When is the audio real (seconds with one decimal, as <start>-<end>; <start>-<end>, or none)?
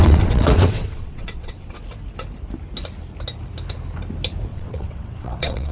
1.8-4.5